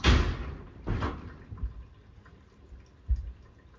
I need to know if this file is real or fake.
real